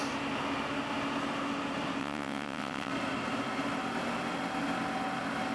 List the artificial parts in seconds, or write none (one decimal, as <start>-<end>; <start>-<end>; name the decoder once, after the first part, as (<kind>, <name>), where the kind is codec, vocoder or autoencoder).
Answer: 2.0-2.9 (vocoder, WaveNeXt)